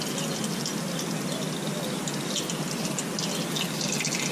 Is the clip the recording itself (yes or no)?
yes